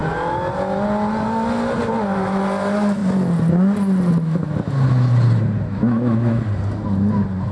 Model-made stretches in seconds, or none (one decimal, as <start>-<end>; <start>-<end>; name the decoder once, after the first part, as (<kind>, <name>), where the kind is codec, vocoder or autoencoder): 5.7-6.4 (autoencoder, DAC-VAE)